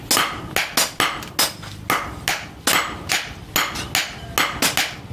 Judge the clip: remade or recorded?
recorded